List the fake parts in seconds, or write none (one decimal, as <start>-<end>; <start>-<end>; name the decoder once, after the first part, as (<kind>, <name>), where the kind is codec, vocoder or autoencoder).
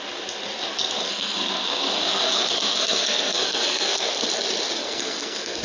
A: 1.0-4.2 (codec, SNAC); 4.8-5.6